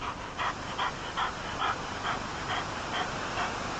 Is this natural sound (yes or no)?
no